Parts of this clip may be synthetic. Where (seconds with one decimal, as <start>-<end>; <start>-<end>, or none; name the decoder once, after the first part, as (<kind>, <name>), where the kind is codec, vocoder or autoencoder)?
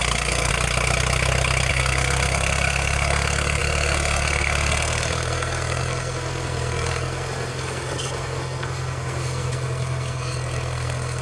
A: 0.0-0.5 (codec, SNAC); 1.7-11.2